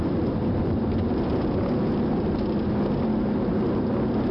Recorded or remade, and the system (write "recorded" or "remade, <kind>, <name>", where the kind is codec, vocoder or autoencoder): recorded